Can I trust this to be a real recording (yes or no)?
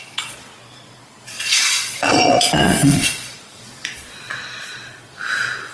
no